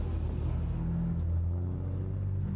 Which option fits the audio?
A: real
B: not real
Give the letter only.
A